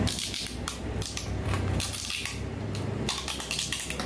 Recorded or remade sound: remade